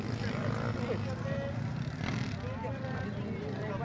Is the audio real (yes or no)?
yes